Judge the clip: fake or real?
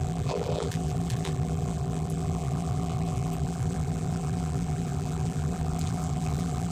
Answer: fake